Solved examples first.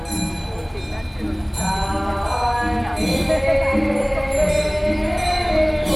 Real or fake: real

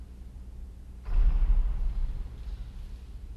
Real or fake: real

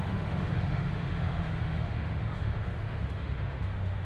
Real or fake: fake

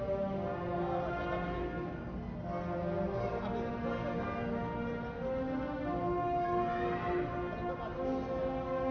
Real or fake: real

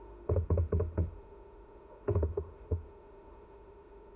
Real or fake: fake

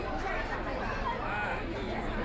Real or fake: real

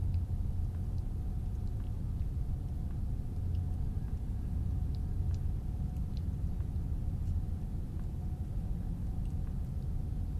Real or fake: real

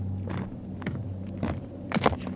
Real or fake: real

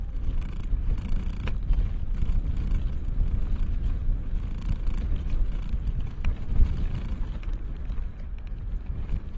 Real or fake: real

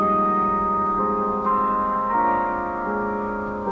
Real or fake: fake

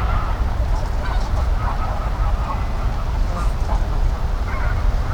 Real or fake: real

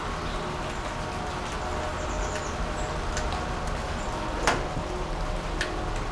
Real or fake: real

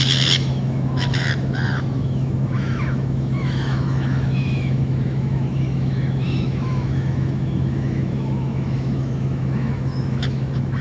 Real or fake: fake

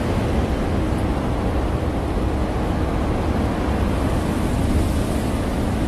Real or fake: real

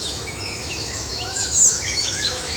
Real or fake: fake